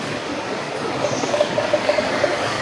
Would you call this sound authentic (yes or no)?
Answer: no